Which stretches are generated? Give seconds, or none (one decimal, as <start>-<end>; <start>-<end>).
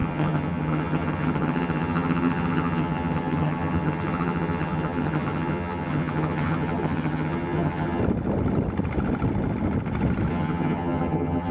0.0-8.0; 10.3-11.5